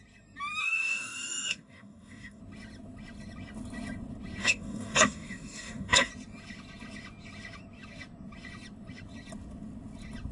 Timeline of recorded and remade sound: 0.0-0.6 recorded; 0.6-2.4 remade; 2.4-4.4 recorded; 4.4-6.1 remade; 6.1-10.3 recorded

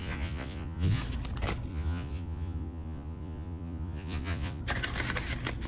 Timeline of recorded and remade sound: 0.0-1.0 remade; 1.0-1.7 recorded; 1.7-4.6 remade; 4.6-5.7 recorded

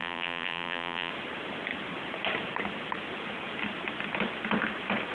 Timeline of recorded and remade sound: 0.0-1.1 remade; 1.1-5.1 recorded

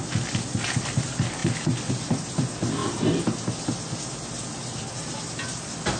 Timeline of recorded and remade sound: 0.0-6.0 recorded

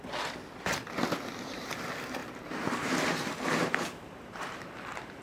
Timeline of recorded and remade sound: 0.0-2.2 recorded; 2.2-4.6 remade; 4.6-5.2 recorded

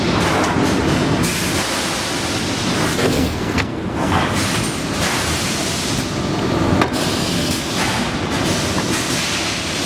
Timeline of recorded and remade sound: 0.0-3.0 recorded; 3.0-4.2 remade; 4.2-7.2 recorded; 7.2-7.7 remade; 7.7-9.9 recorded